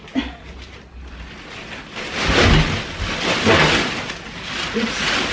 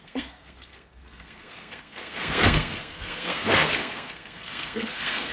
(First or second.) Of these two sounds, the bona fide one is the first